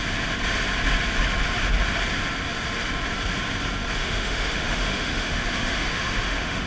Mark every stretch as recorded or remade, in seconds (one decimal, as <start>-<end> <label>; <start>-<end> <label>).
0.0-4.0 recorded; 4.0-6.7 remade